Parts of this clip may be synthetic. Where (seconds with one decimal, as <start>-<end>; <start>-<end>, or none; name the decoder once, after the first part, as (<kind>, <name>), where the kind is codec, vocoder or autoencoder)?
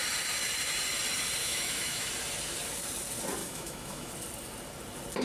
1.4-2.1 (autoencoder, DAC-VAE); 3.4-4.1